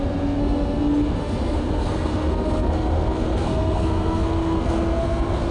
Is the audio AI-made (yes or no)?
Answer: yes